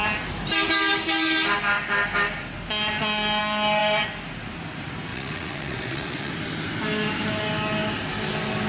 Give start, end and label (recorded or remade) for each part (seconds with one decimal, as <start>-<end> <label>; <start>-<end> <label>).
0.0-5.1 recorded; 5.1-6.3 remade; 6.3-8.7 recorded